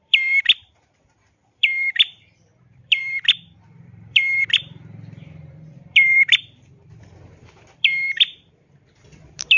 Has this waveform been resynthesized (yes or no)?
yes